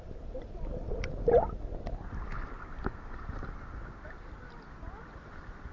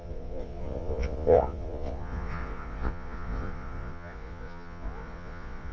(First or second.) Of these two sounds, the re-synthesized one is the second